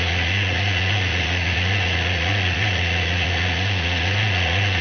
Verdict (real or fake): fake